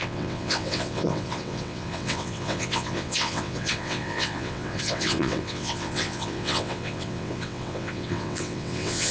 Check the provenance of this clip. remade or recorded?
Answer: remade